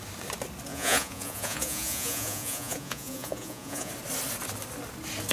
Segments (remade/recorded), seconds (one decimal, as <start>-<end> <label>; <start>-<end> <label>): 0.0-0.7 recorded; 0.7-3.9 remade; 3.9-5.3 recorded